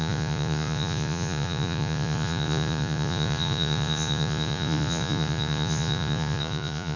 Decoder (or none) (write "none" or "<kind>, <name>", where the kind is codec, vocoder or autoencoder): vocoder, Vocos